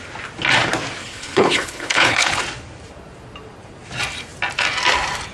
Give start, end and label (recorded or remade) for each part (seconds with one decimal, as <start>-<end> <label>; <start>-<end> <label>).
0.0-1.0 recorded; 1.0-2.4 remade; 2.4-5.3 recorded